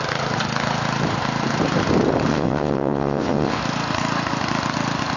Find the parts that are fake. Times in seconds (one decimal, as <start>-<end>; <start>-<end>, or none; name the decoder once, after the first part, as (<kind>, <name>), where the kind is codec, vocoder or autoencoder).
2.3-3.6 (vocoder, WaveNeXt)

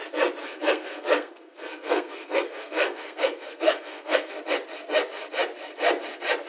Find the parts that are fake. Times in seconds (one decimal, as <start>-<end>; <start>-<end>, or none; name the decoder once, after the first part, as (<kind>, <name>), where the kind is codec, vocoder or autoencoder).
0.4-4.3 (codec, SNAC)

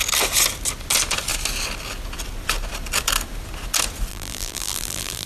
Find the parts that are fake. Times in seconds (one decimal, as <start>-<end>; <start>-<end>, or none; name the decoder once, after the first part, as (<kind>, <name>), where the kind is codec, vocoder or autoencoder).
4.1-5.3 (vocoder, BigVGAN v2)

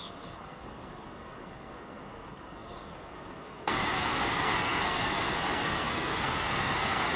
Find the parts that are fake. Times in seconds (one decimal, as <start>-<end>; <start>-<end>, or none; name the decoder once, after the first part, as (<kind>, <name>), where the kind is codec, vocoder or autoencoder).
0.0-7.2 (codec, SNAC)